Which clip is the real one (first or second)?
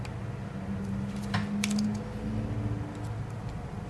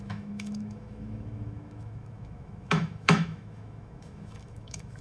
first